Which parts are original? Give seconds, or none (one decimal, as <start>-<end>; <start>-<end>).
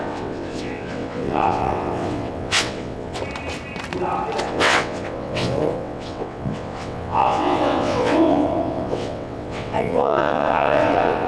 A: 3.2-4.4